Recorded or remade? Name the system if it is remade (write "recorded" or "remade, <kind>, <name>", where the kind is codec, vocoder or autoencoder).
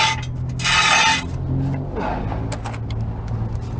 recorded